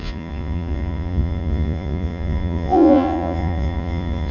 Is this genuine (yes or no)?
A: no